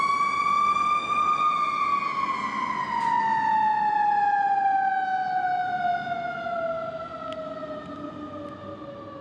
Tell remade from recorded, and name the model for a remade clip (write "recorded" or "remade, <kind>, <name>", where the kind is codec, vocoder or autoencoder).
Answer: recorded